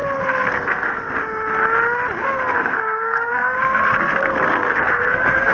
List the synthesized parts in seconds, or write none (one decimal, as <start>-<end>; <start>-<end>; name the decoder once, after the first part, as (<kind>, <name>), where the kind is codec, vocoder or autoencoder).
0.0-1.0 (codec, SNAC); 2.2-5.5